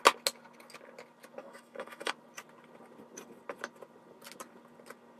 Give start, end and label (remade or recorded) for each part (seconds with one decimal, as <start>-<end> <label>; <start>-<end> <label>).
0.0-1.4 recorded; 1.4-2.1 remade; 2.1-5.2 recorded